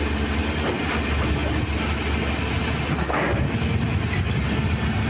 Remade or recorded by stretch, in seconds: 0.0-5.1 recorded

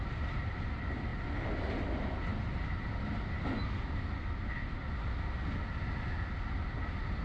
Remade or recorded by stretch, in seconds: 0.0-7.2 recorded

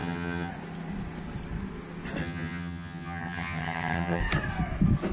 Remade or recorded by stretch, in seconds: 0.0-0.5 remade; 0.5-2.2 recorded; 2.2-4.2 remade; 4.2-5.1 recorded

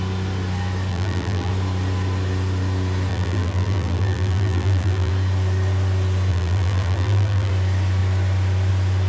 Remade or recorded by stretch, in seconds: 0.0-0.9 recorded; 0.9-1.5 remade; 1.5-3.1 recorded; 3.1-5.1 remade; 5.1-6.3 recorded; 6.3-7.5 remade; 7.5-9.1 recorded

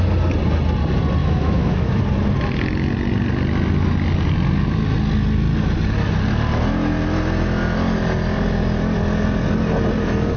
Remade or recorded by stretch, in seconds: 0.0-1.2 recorded; 1.2-2.0 remade; 2.0-10.4 recorded

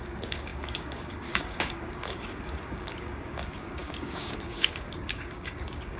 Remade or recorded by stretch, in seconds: 0.0-6.0 remade